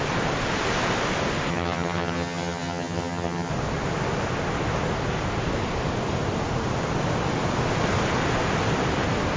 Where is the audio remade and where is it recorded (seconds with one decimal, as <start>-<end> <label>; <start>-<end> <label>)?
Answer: 0.0-1.5 recorded; 1.5-3.5 remade; 3.5-9.4 recorded